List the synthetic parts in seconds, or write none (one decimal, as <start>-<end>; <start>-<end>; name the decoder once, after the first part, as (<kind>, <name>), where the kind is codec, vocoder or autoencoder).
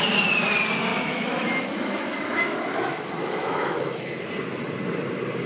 0.9-4.2 (autoencoder, DAC-VAE)